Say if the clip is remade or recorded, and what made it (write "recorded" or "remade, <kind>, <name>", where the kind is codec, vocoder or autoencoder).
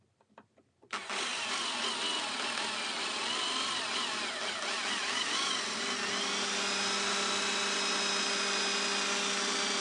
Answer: recorded